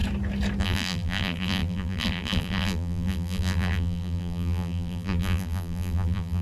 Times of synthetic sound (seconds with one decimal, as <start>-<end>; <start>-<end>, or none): 0.6-6.4